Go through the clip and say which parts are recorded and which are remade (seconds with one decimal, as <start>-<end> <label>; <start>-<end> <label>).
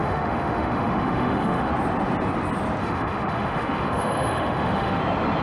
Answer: 0.0-1.7 remade; 1.7-2.8 recorded; 2.8-5.0 remade; 5.0-5.4 recorded